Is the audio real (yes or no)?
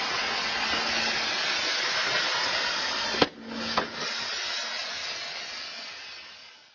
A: yes